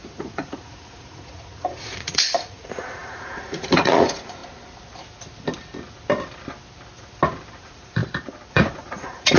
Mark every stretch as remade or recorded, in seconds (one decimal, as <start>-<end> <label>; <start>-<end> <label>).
0.0-4.4 remade; 4.4-7.6 recorded; 7.6-8.0 remade; 8.0-8.5 recorded; 8.5-9.4 remade